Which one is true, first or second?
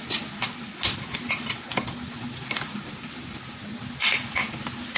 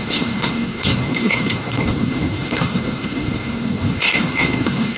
first